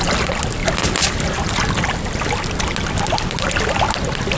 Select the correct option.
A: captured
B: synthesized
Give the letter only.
A